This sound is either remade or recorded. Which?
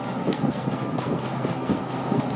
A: remade